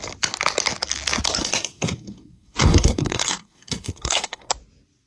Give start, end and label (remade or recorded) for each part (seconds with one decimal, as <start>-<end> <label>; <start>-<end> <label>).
0.0-1.4 recorded; 1.4-4.5 remade; 4.5-5.1 recorded